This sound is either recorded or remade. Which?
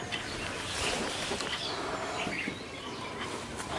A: recorded